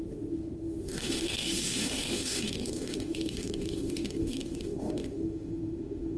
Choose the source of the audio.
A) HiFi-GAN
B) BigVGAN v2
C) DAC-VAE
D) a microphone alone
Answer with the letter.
C